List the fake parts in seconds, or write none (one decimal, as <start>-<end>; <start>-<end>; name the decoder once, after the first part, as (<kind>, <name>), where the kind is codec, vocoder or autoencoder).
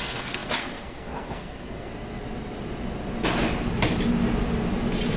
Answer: 0.0-1.9 (codec, SNAC)